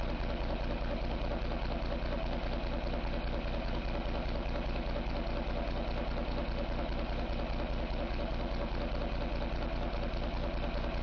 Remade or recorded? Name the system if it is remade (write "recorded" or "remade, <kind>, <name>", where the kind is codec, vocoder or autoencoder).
recorded